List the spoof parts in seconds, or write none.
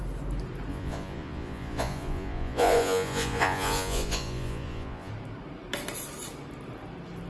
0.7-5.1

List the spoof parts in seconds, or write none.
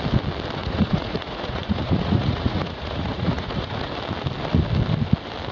0.6-3.9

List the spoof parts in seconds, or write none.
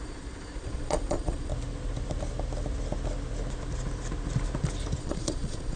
0.0-1.5; 5.0-5.8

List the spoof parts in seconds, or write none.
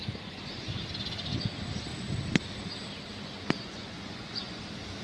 0.0-0.8; 1.9-2.4; 3.1-4.6